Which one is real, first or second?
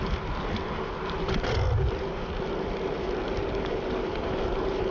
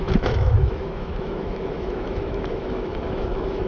first